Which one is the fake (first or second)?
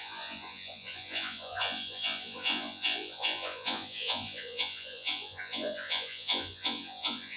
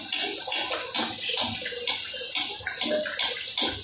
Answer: first